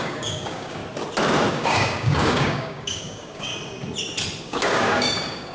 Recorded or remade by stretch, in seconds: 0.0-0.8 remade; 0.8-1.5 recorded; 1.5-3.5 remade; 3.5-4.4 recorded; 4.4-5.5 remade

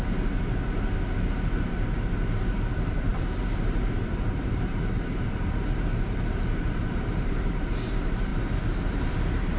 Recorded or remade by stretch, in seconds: 0.0-9.6 remade

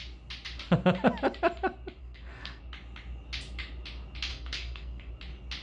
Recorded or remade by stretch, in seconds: 0.0-2.0 recorded; 2.0-2.6 remade; 2.6-4.3 recorded; 4.3-5.1 remade; 5.1-5.6 recorded

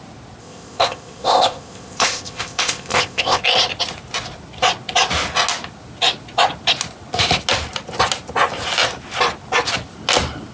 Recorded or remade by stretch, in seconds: 0.0-0.4 recorded; 0.4-3.4 remade; 3.4-10.5 recorded

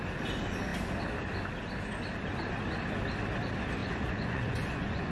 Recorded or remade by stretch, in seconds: 0.0-3.8 recorded; 3.8-5.1 remade

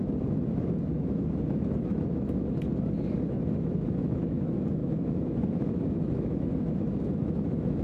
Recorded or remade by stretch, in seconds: 0.0-7.8 remade